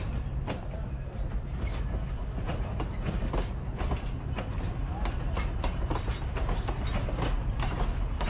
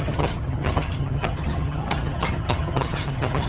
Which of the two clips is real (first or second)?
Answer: first